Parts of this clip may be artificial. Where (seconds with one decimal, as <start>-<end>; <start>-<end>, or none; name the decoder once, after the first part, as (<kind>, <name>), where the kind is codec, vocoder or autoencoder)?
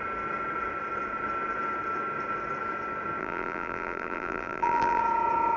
3.2-5.0 (vocoder, BigVGAN v2)